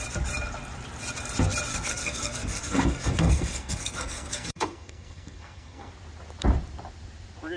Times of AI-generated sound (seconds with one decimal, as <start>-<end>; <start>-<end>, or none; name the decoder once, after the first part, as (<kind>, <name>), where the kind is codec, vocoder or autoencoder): 1.7-5.9 (codec, SNAC)